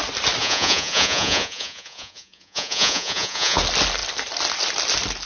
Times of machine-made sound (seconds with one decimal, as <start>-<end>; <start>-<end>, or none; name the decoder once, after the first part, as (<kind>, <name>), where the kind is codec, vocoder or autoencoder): 0.4-3.6 (vocoder, Vocos)